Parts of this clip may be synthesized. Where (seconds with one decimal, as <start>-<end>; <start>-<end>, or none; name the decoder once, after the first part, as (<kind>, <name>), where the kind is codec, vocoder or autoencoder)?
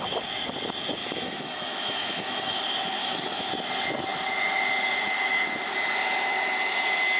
1.0-2.6 (autoencoder, DAC-VAE); 3.0-3.5